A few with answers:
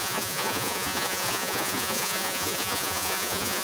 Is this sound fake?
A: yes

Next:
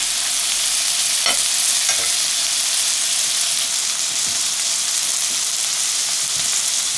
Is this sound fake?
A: no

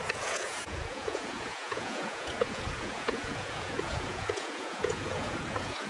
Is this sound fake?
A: yes